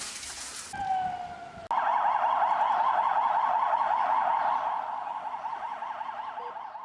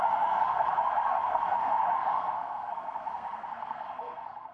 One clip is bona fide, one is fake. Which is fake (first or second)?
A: second